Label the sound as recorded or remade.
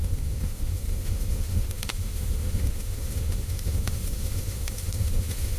remade